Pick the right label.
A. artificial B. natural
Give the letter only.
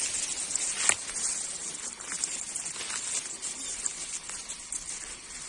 B